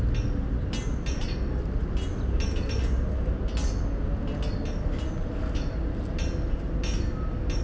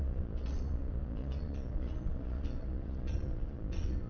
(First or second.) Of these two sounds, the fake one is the second